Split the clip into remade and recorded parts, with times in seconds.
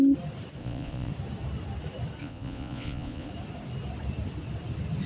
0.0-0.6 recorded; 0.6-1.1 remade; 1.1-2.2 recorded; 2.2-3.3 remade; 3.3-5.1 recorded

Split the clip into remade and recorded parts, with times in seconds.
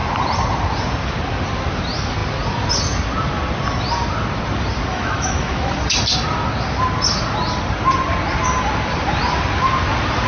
0.0-4.9 recorded; 4.9-5.7 remade; 5.7-10.3 recorded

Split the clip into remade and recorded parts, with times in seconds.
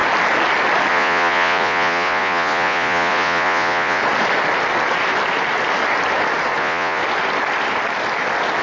0.0-0.9 recorded; 0.9-4.0 remade; 4.0-6.6 recorded; 6.6-7.0 remade; 7.0-8.6 recorded